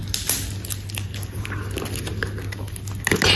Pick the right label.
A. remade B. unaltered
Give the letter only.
B